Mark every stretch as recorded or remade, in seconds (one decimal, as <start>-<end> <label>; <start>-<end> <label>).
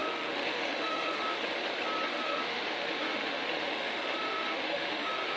0.0-1.4 remade; 1.4-2.1 recorded; 2.1-5.4 remade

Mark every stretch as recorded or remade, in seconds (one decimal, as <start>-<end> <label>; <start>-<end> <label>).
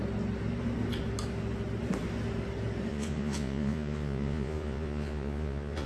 0.0-2.9 recorded; 2.9-5.9 remade